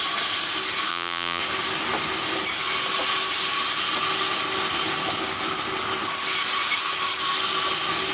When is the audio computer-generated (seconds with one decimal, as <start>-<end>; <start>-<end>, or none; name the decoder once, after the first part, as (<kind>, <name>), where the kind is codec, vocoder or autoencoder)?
0.9-1.4 (vocoder, BigVGAN v2)